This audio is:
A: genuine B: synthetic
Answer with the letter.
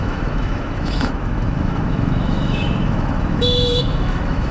B